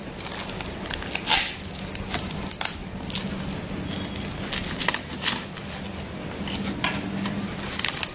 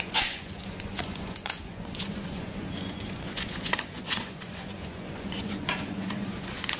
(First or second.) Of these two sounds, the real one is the first